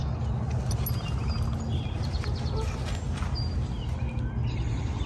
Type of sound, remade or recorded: recorded